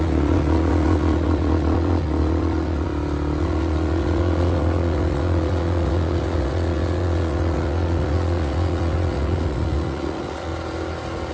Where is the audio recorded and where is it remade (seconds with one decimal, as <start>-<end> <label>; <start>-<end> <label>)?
0.0-2.9 remade; 2.9-3.4 recorded; 3.4-10.5 remade; 10.5-11.3 recorded